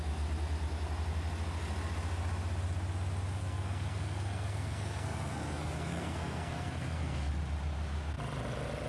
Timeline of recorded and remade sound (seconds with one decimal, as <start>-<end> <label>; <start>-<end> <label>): 0.0-3.4 recorded; 3.4-7.3 remade; 7.3-8.9 recorded